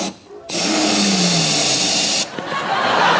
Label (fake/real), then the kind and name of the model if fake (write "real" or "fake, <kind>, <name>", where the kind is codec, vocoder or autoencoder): real